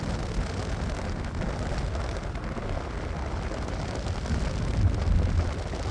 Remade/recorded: recorded